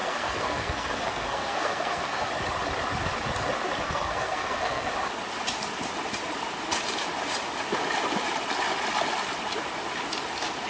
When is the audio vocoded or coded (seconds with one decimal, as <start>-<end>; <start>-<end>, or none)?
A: 0.0-2.3; 3.8-4.9